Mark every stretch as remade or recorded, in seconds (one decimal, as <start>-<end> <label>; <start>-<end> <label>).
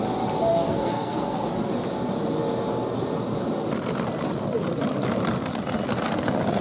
0.0-0.5 recorded; 0.5-1.7 remade; 1.7-6.6 recorded